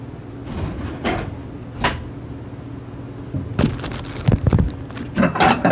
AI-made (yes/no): no